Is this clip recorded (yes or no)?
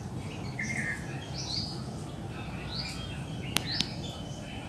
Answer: yes